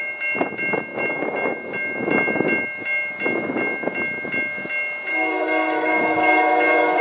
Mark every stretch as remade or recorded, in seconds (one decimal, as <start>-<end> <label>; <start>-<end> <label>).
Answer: 0.0-5.1 recorded; 5.1-7.0 remade